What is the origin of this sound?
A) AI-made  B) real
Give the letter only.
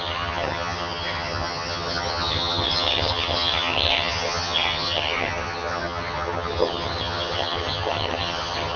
A